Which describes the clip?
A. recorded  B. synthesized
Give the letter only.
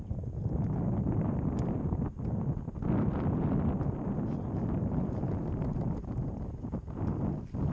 A